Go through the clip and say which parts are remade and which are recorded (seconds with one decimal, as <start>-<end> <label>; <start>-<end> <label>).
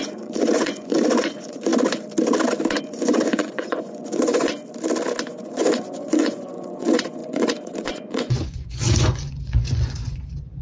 0.0-1.7 remade; 1.7-2.8 recorded; 2.8-4.5 remade; 4.5-5.3 recorded; 5.3-10.6 remade